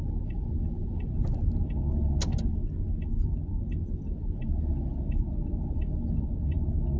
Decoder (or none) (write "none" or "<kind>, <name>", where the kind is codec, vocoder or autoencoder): none